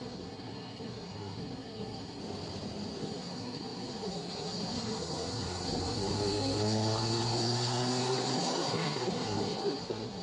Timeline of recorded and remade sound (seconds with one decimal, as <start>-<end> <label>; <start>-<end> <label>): 0.0-2.2 remade; 2.2-3.0 recorded; 3.0-10.2 remade